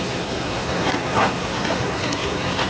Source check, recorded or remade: remade